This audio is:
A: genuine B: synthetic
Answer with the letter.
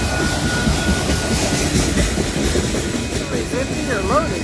A